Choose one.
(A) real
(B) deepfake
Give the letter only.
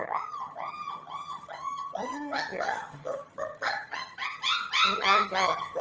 B